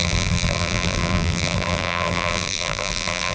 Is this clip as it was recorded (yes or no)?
no